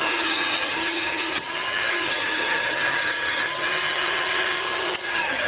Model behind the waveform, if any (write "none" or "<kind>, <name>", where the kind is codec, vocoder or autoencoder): vocoder, HiFi-GAN